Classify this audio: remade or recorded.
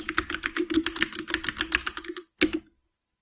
recorded